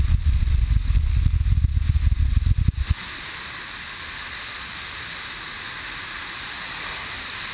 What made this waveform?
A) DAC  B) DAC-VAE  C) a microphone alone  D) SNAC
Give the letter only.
C